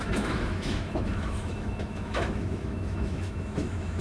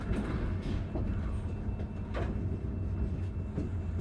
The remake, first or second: first